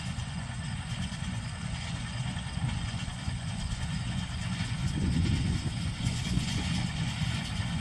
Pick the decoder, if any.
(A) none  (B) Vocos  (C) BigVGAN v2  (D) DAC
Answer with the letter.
B